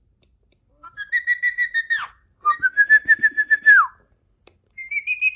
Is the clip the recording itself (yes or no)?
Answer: yes